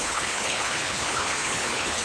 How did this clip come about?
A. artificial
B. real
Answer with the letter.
A